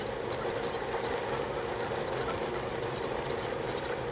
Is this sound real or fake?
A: real